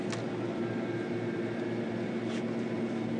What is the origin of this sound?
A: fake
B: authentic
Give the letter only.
B